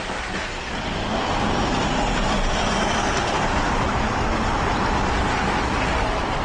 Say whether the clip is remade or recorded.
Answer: recorded